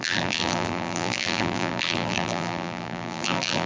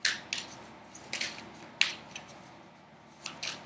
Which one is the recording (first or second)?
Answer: second